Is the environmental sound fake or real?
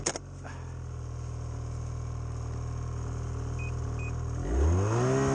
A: real